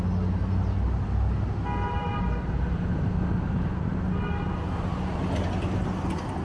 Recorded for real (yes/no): yes